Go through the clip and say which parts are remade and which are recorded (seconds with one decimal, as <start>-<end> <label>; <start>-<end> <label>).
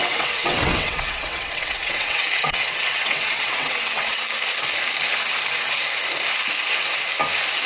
0.0-4.2 remade; 4.2-7.7 recorded